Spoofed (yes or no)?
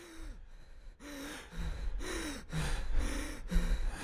no